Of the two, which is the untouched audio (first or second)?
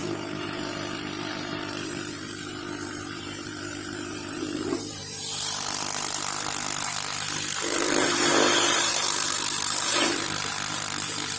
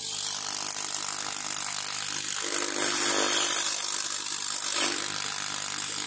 second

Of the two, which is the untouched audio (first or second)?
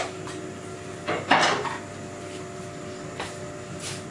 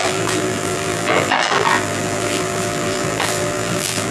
first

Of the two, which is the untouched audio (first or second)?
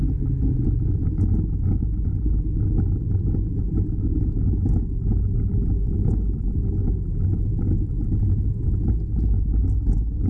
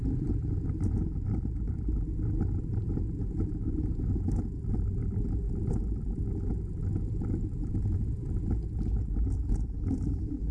first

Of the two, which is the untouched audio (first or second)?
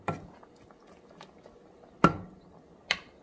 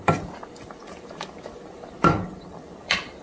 first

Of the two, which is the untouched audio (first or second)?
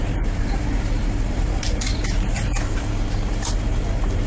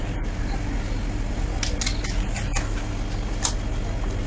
second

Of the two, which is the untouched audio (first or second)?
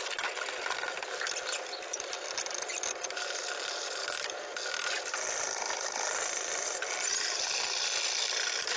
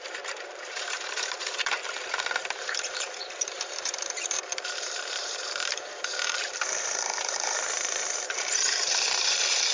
first